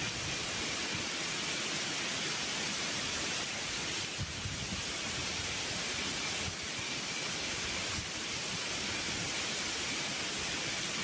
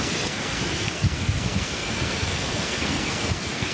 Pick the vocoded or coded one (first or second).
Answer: second